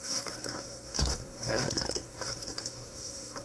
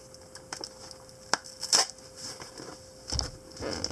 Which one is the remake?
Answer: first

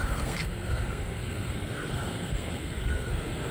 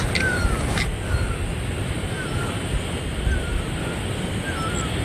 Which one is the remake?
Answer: first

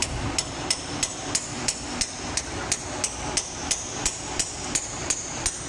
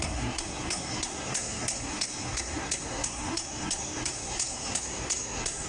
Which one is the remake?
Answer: second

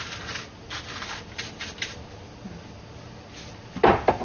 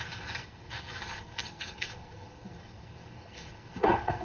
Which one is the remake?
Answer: second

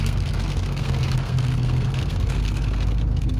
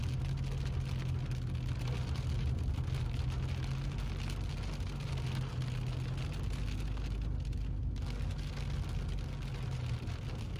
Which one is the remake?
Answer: first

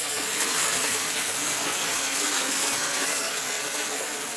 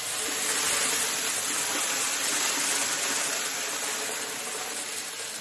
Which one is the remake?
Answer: first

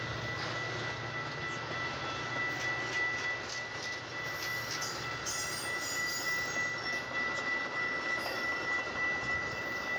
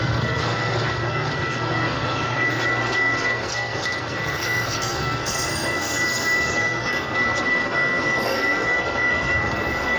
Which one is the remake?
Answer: second